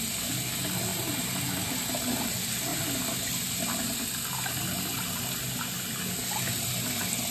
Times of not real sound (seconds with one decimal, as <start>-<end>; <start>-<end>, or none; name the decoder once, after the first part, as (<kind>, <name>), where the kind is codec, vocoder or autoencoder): none